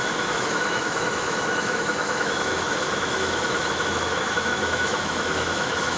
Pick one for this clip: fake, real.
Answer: fake